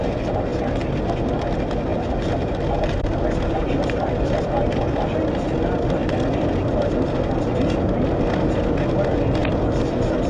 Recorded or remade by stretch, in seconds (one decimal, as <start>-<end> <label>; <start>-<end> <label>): 0.0-10.3 recorded